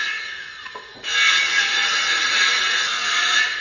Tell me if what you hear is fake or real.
fake